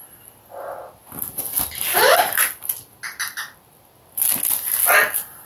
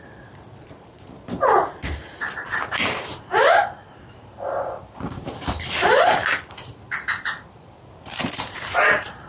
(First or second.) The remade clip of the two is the second